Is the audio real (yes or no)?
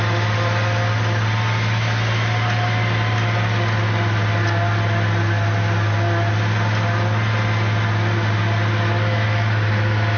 yes